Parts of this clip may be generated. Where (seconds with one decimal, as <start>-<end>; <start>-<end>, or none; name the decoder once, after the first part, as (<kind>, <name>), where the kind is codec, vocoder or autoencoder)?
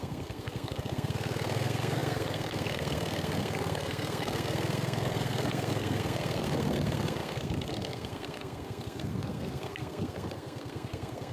0.0-11.3 (codec, SNAC)